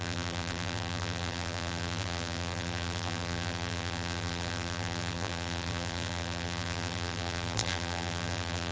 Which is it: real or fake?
fake